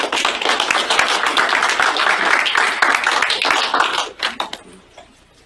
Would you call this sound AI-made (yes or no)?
no